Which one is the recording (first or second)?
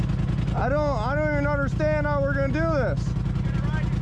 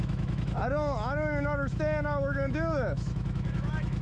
first